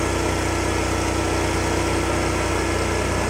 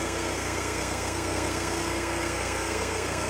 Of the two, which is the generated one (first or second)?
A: second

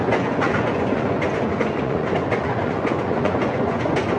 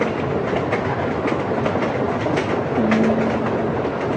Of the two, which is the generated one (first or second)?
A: first